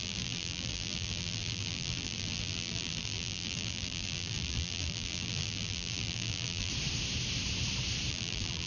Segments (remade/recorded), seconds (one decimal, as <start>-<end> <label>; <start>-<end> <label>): 0.0-6.7 remade; 6.7-8.1 recorded; 8.1-8.7 remade